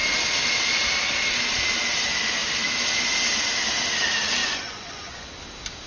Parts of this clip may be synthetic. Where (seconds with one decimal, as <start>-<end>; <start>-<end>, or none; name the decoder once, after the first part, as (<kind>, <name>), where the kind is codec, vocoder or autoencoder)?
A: 4.4-5.3 (vocoder, Vocos)